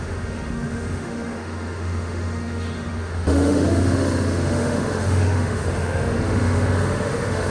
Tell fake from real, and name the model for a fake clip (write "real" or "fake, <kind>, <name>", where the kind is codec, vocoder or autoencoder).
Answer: fake, autoencoder, DAC-VAE